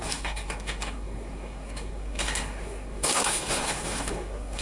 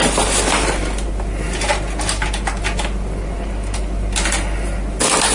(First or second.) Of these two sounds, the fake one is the first